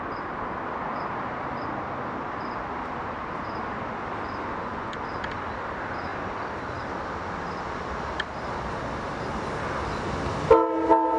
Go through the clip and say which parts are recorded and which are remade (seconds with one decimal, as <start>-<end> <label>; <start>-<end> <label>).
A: 0.0-4.5 recorded; 4.5-5.0 remade; 5.0-11.2 recorded